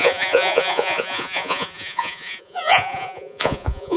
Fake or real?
fake